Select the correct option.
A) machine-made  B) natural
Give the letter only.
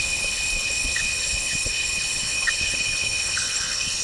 A